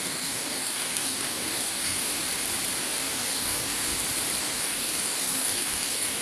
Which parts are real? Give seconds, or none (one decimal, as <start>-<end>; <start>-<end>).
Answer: 2.2-2.8; 3.9-4.4